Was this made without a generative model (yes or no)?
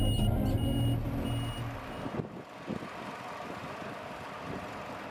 yes